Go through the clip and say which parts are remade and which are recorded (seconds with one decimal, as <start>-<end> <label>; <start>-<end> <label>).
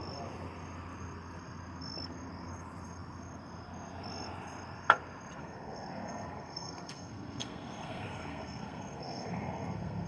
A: 0.0-5.4 recorded; 5.4-10.1 remade